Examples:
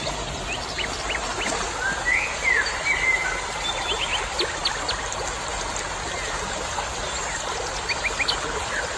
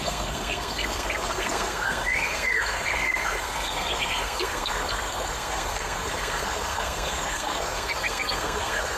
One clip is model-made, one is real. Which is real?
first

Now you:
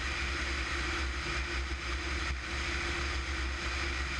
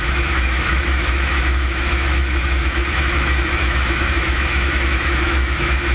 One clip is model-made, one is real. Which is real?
first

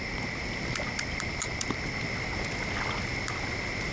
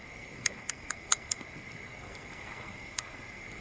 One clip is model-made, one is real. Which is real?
first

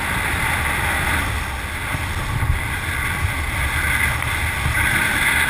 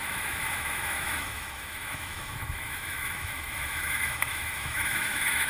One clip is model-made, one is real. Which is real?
first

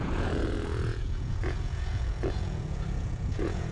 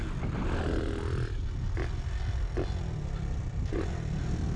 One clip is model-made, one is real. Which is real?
second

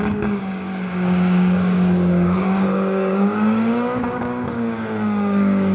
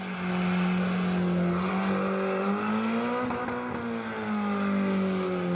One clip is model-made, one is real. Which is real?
second